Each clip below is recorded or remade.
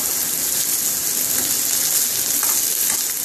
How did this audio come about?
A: recorded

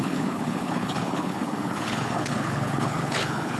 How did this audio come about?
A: remade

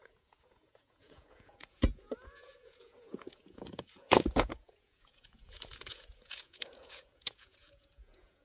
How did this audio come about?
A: remade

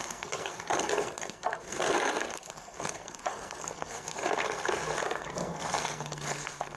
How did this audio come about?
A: remade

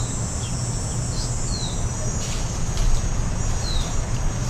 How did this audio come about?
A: recorded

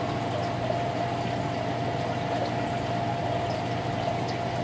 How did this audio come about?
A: recorded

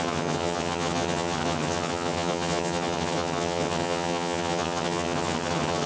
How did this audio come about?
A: remade